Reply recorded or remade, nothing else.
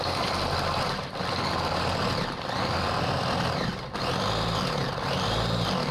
recorded